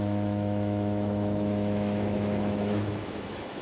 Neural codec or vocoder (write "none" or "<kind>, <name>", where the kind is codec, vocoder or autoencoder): autoencoder, DAC-VAE